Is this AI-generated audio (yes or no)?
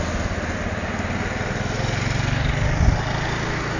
no